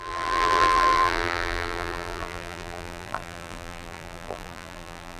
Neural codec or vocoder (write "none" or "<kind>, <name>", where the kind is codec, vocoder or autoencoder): vocoder, BigVGAN v2